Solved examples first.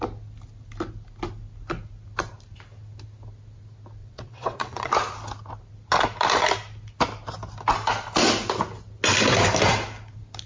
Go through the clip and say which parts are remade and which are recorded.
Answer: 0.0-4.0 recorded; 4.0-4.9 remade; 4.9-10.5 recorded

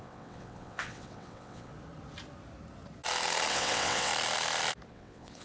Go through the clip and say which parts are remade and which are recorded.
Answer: 0.0-1.7 remade; 1.7-3.5 recorded; 3.5-4.1 remade; 4.1-4.9 recorded; 4.9-5.4 remade

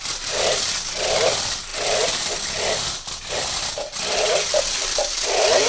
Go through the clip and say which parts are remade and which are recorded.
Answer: 0.0-5.7 recorded